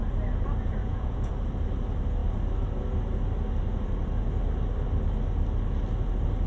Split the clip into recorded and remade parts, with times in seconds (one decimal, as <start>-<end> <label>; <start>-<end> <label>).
0.0-0.8 recorded; 0.8-1.3 remade; 1.3-6.5 recorded